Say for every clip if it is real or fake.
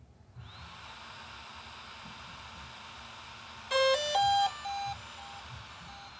real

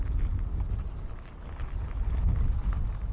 real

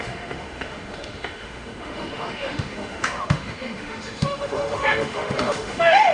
fake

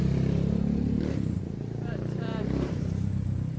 fake